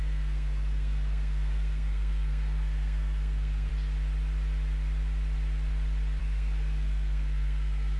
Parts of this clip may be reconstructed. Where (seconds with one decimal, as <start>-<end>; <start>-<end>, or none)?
0.0-3.7; 6.2-8.0